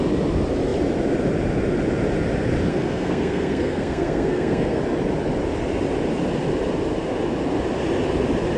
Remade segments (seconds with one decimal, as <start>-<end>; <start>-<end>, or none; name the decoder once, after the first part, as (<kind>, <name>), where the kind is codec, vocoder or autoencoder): 2.7-4.8 (codec, SNAC)